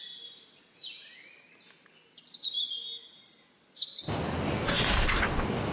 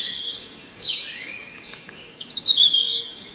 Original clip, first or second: first